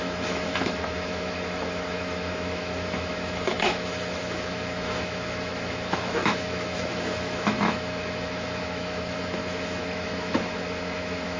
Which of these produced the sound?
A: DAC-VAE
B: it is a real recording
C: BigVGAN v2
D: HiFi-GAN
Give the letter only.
A